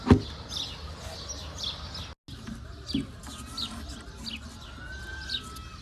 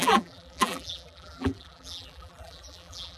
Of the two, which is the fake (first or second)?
second